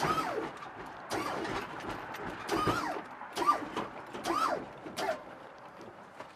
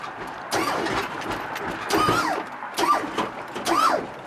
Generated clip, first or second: first